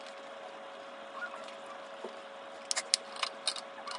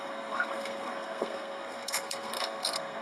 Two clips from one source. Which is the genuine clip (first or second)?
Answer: first